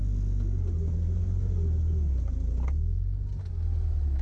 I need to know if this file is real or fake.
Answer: real